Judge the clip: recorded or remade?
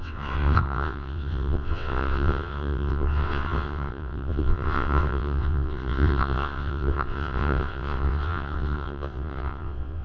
remade